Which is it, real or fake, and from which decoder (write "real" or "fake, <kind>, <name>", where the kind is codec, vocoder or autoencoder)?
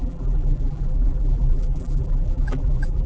fake, vocoder, BigVGAN v2